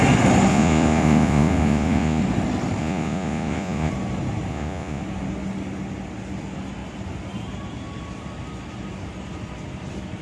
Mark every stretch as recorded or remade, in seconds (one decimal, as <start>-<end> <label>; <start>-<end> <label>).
0.0-0.5 recorded; 0.5-2.2 remade; 2.2-2.8 recorded; 2.8-3.9 remade; 3.9-4.5 recorded; 4.5-5.0 remade; 5.0-10.2 recorded